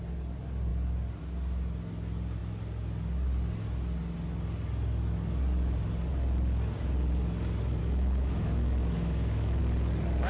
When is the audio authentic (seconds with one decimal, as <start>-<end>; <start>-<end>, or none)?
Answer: 0.0-7.8; 9.6-10.3